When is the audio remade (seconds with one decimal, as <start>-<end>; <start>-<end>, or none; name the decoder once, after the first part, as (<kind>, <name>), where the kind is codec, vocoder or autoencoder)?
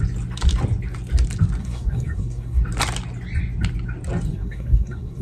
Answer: 1.6-2.6 (codec, SNAC); 4.3-5.2